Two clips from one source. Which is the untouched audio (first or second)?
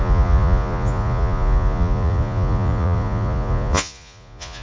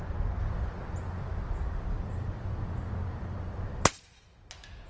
second